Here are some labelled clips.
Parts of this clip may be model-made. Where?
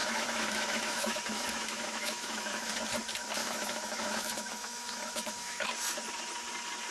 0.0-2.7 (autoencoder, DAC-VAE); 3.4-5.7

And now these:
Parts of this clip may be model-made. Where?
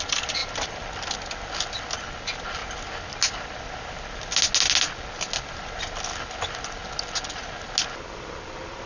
none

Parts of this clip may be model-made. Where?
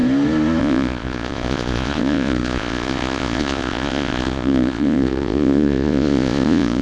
0.6-6.8 (vocoder, Vocos)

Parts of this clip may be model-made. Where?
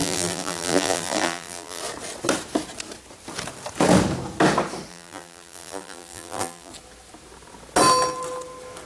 0.0-1.8 (vocoder, BigVGAN v2); 4.9-6.7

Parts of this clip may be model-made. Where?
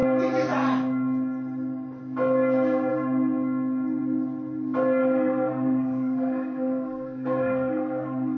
5.0-8.4 (codec, SNAC)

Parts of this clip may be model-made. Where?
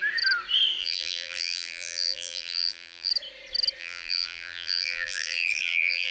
0.8-3.1 (vocoder, BigVGAN v2); 3.8-6.1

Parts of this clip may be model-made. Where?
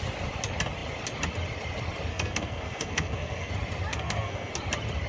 2.1-3.5 (codec, SNAC); 3.9-4.5